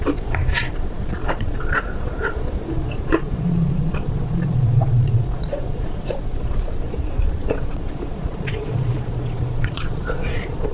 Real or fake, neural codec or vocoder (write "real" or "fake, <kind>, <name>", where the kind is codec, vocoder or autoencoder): fake, vocoder, Vocos